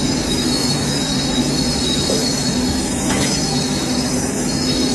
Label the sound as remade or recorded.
remade